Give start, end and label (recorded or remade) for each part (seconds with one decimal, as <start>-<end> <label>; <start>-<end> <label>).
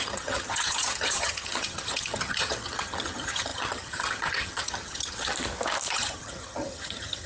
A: 0.0-5.3 remade; 5.3-5.9 recorded; 5.9-7.3 remade